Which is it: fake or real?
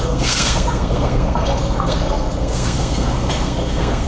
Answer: fake